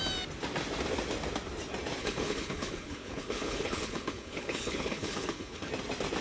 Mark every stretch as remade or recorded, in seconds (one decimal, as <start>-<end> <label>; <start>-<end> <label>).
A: 0.0-2.0 recorded; 2.0-5.7 remade; 5.7-6.2 recorded